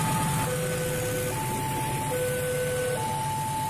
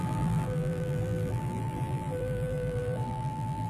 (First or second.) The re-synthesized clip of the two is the second